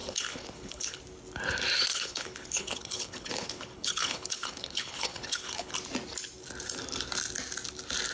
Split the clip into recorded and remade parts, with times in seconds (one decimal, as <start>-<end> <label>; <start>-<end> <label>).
0.0-1.0 remade; 1.0-1.9 recorded; 1.9-5.7 remade; 5.7-8.1 recorded